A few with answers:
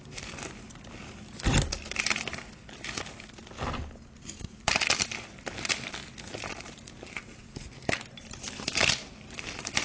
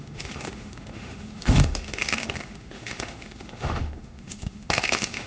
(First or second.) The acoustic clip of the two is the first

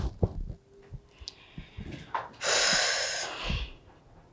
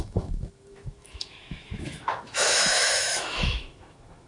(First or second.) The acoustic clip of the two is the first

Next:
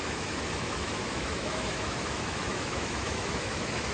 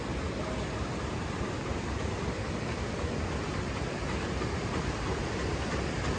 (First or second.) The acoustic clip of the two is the second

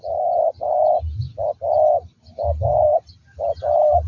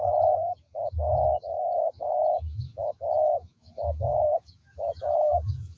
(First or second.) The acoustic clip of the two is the first